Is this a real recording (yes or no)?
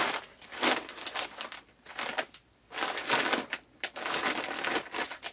yes